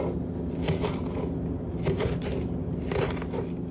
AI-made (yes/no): no